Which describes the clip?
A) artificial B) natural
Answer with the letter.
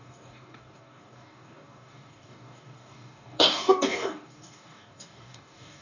A